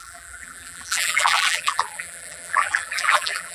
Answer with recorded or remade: remade